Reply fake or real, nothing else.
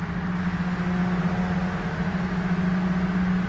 real